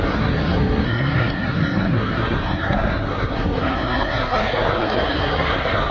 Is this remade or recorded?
remade